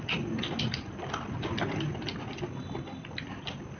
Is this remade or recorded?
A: recorded